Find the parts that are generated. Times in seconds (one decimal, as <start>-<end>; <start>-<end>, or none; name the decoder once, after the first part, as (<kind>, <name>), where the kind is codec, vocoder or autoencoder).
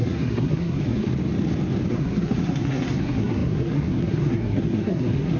0.0-1.1 (codec, SNAC); 1.9-5.4